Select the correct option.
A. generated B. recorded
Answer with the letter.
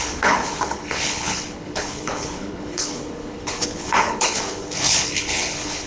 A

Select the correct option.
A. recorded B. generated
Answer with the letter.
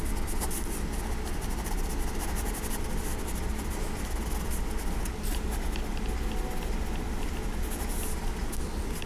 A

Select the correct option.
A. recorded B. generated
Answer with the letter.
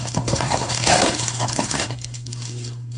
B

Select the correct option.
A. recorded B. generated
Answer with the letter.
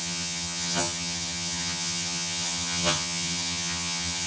B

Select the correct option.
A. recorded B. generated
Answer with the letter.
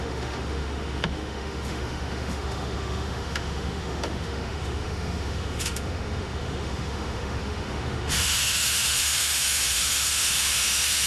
B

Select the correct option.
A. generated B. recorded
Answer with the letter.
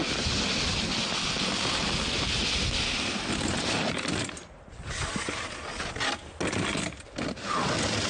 B